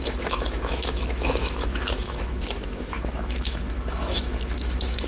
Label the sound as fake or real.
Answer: fake